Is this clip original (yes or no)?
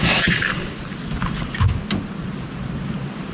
yes